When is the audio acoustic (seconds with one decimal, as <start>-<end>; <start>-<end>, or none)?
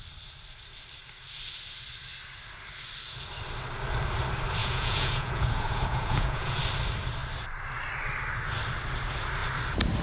0.0-4.6; 6.6-10.0